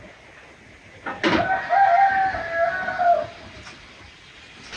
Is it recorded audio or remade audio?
recorded